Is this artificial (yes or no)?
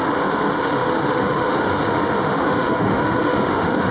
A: yes